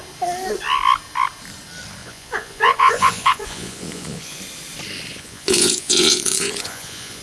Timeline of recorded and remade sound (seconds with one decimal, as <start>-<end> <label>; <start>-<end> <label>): 0.0-2.0 recorded; 2.0-4.4 remade; 4.4-5.1 recorded; 5.1-7.2 remade